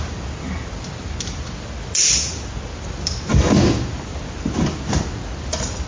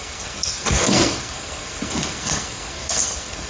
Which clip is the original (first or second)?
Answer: first